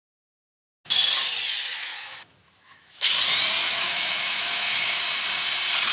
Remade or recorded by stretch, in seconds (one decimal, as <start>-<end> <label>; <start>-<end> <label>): 0.0-1.7 recorded; 1.7-3.1 remade; 3.1-3.6 recorded; 3.6-5.0 remade; 5.0-5.9 recorded